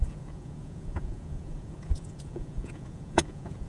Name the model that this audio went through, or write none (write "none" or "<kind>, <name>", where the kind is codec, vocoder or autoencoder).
vocoder, Vocos